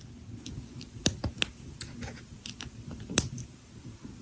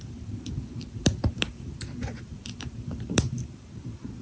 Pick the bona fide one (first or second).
first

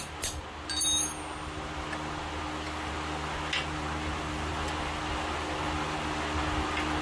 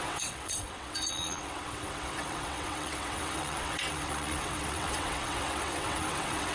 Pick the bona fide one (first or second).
first